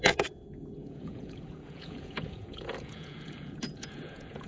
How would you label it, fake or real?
fake